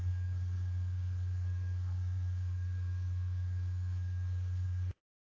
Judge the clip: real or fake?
fake